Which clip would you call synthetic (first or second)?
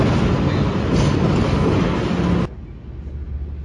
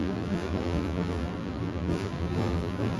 second